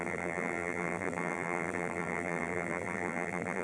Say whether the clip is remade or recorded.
remade